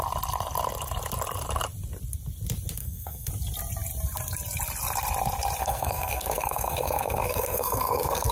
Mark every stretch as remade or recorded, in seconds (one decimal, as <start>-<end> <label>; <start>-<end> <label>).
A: 0.0-2.8 recorded; 2.8-3.3 remade; 3.3-5.6 recorded; 5.6-8.3 remade